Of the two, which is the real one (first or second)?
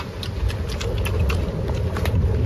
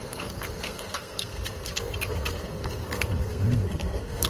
first